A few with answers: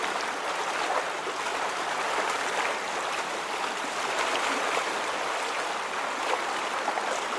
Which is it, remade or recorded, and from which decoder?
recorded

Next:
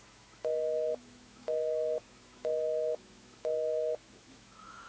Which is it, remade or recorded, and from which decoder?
remade, autoencoder, DAC-VAE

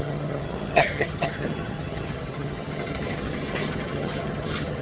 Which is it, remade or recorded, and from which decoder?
remade, vocoder, HiFi-GAN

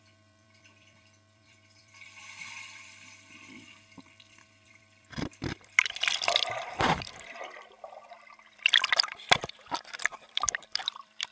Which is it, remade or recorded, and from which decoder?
remade, vocoder, BigVGAN v2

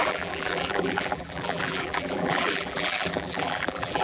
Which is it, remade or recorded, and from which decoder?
remade, vocoder, BigVGAN v2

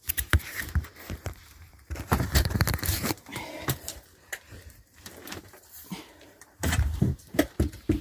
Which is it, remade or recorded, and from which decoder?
remade, vocoder, BigVGAN v2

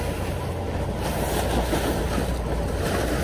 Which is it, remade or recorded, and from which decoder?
recorded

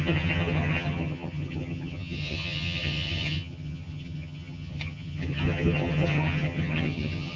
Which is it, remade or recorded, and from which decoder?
remade, vocoder, HiFi-GAN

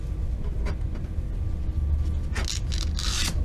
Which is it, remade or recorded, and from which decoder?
recorded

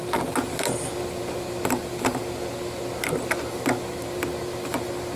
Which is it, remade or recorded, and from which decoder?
recorded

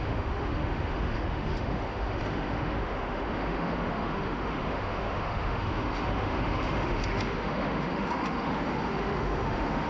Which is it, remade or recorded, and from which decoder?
remade, autoencoder, DAC-VAE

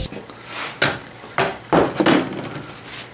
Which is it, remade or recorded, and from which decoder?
recorded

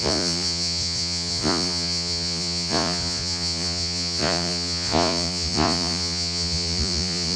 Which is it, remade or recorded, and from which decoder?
remade, vocoder, Vocos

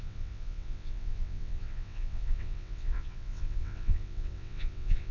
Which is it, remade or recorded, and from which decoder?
remade, vocoder, WaveNeXt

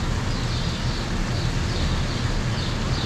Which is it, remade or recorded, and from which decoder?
recorded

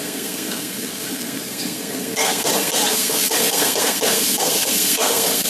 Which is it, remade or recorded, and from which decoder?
remade, codec, SNAC